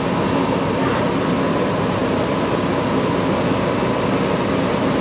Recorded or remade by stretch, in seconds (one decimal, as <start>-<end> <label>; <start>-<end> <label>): 0.0-5.0 recorded